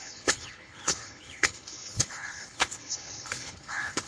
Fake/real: fake